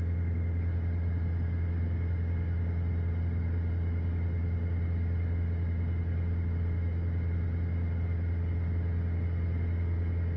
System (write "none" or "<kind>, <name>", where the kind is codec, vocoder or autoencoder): none